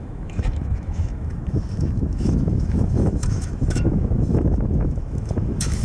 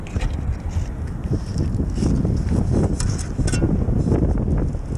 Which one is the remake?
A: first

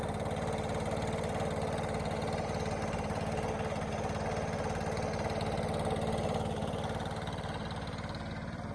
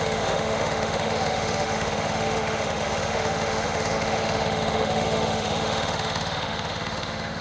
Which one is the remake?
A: second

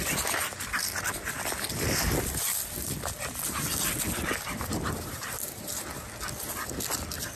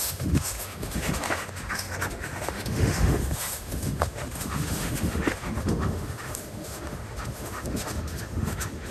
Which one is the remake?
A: second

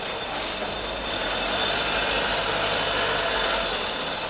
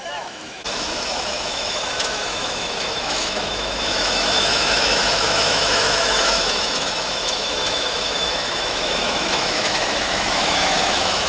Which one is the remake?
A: second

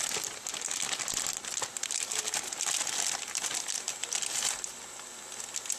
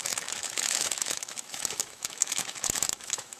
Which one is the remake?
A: second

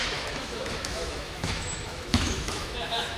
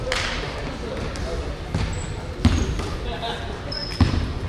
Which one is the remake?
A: first